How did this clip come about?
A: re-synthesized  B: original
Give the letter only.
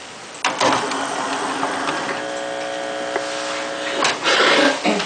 B